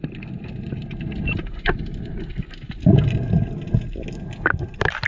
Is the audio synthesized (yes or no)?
no